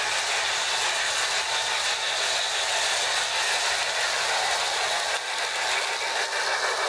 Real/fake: real